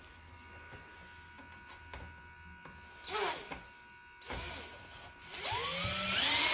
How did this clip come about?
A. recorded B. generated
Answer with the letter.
A